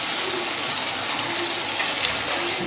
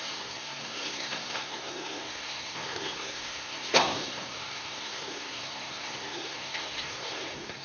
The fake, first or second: second